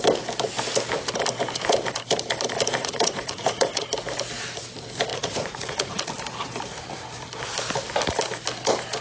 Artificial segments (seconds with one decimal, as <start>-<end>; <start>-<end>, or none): 2.8-3.9; 5.1-6.1